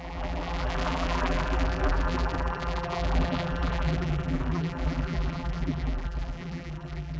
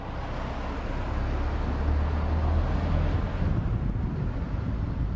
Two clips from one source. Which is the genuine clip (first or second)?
second